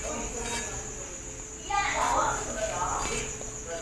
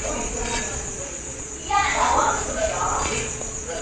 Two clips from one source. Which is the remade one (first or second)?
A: second